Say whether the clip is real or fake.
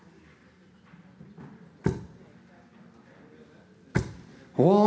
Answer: real